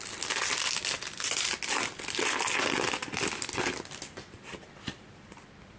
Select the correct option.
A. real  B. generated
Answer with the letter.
A